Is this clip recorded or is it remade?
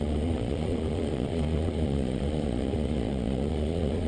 remade